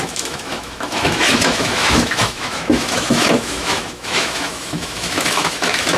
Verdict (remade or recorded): remade